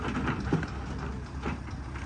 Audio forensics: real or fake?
real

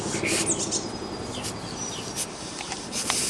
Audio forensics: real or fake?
real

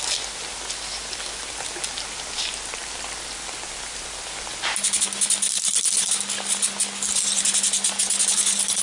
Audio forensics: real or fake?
real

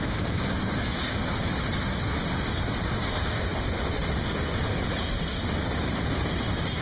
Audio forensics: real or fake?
real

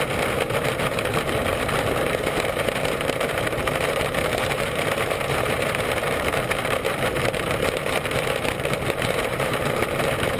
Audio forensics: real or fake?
fake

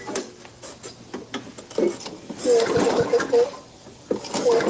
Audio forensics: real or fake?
real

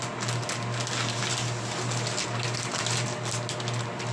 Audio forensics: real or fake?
real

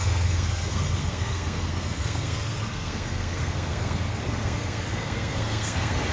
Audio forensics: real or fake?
fake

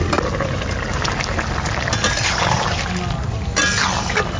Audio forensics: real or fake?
real